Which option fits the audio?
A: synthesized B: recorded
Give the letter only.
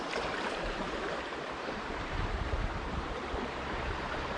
A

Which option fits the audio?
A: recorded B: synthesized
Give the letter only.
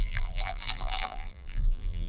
B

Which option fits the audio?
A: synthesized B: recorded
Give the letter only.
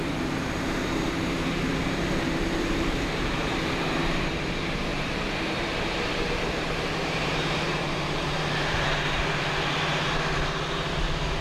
A